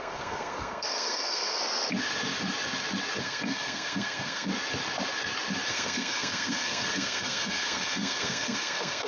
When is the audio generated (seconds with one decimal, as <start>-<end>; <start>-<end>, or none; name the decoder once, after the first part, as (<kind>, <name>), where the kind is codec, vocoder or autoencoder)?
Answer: 0.0-1.6 (codec, SNAC); 3.2-4.5; 5.7-9.1